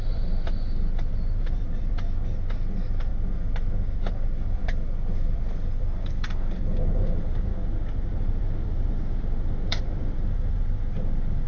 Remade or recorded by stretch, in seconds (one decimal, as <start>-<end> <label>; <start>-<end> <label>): 0.0-3.1 remade; 3.1-4.0 recorded; 4.0-7.5 remade; 7.5-8.1 recorded; 8.1-11.5 remade